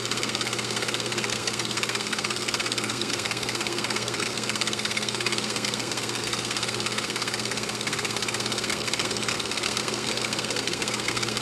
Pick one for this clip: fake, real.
fake